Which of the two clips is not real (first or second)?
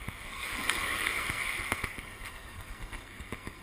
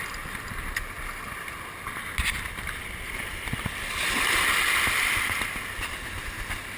first